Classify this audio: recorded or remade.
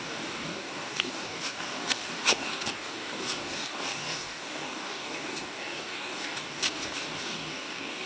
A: remade